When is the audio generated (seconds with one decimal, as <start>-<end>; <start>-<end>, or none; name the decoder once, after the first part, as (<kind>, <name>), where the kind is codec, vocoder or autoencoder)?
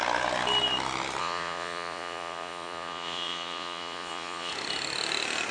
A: 1.2-4.5 (vocoder, Vocos)